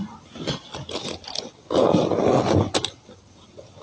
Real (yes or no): yes